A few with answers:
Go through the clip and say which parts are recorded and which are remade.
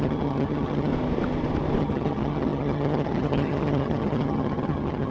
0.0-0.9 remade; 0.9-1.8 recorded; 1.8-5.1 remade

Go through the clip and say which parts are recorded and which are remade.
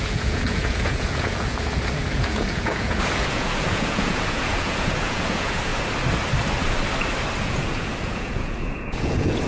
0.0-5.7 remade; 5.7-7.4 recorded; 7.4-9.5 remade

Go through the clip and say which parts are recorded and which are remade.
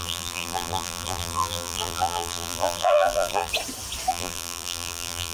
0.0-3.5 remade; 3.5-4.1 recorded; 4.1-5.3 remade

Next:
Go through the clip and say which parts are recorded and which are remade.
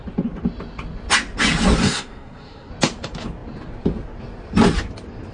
0.0-1.8 recorded; 1.8-2.7 remade; 2.7-5.3 recorded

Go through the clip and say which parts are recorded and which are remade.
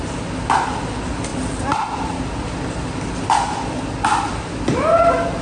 0.0-5.4 recorded